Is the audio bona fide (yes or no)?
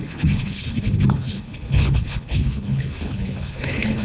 no